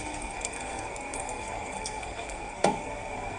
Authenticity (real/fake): fake